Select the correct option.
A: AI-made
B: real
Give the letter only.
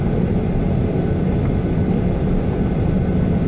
B